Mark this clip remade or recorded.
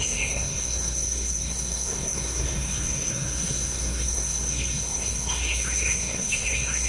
remade